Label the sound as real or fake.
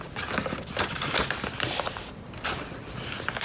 real